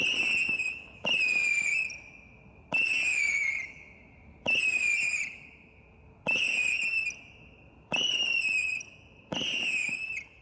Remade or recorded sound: recorded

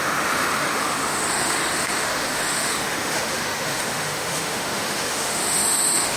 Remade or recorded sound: remade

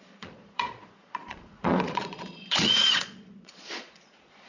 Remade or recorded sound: remade